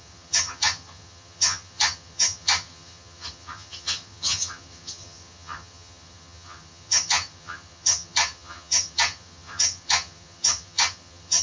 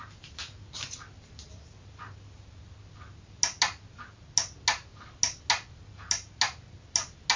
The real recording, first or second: second